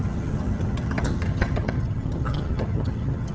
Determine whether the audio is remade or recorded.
remade